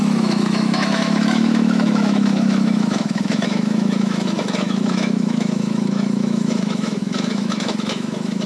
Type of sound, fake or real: fake